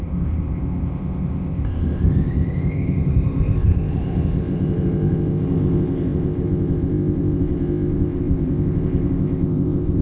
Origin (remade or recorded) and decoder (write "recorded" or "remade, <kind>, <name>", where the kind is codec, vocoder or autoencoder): remade, codec, ZipCodec